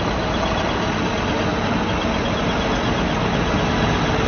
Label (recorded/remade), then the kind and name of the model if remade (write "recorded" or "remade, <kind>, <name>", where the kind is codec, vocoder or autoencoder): recorded